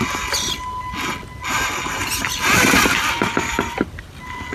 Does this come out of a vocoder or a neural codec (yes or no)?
no